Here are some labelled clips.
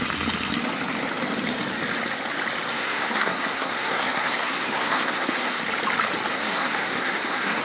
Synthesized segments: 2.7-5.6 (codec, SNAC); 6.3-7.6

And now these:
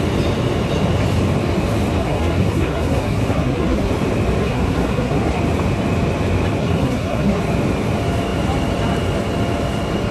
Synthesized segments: 2.0-3.9 (codec, SNAC); 4.4-5.4; 6.6-7.4

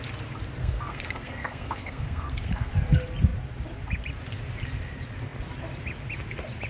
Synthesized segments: 0.6-2.7 (codec, SNAC)

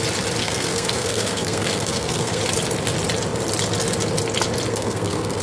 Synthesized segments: 0.4-2.4 (codec, SNAC); 4.7-5.4

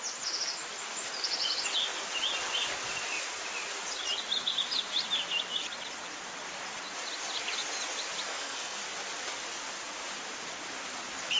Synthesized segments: 8.3-8.8 (codec, SNAC)